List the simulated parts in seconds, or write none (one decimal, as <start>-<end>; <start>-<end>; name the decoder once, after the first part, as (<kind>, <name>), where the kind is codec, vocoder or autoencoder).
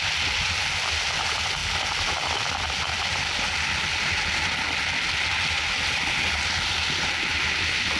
1.6-3.2 (vocoder, BigVGAN v2); 7.3-8.0